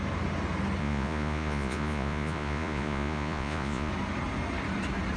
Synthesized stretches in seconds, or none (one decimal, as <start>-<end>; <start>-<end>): 0.8-3.9